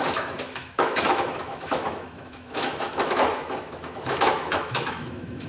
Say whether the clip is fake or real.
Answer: fake